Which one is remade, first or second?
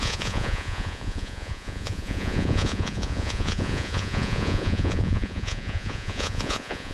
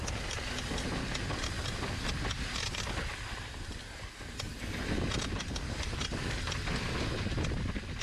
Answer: first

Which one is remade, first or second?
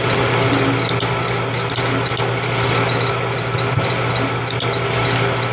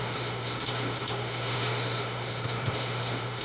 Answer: second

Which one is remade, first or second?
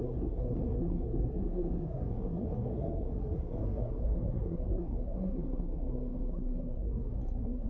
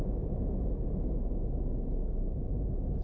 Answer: first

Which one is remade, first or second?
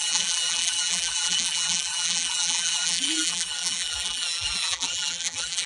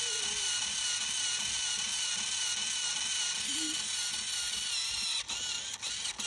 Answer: first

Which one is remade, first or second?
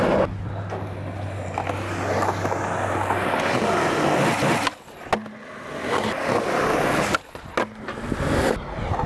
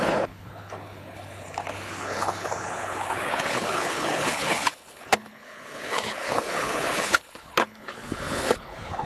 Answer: second